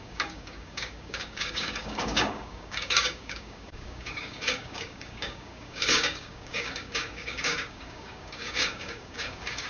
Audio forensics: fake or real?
fake